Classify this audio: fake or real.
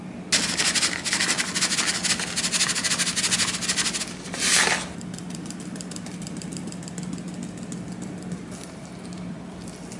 real